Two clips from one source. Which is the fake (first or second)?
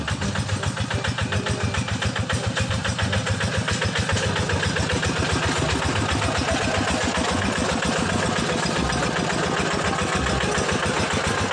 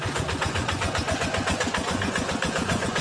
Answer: second